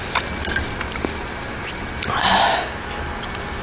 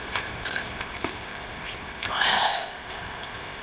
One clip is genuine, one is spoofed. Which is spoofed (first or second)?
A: second